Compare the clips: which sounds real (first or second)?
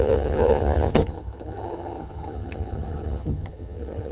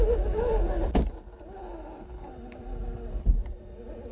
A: second